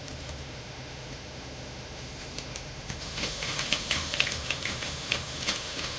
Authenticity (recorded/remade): remade